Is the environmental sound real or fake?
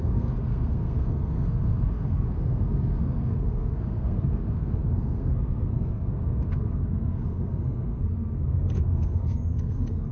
fake